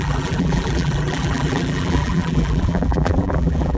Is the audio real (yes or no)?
no